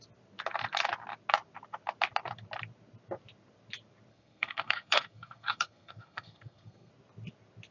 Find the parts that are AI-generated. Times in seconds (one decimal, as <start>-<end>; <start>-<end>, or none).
4.1-6.9